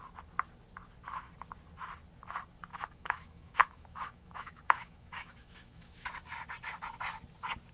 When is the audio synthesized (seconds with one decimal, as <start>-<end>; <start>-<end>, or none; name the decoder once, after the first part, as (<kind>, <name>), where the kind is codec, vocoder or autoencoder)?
2.7-6.1 (autoencoder, DAC-VAE)